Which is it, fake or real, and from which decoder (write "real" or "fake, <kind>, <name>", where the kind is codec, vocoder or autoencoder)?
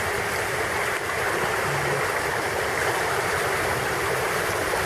real